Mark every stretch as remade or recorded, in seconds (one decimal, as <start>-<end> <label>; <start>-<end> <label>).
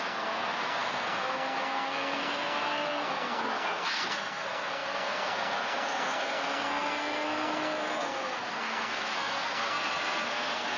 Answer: 0.0-10.8 remade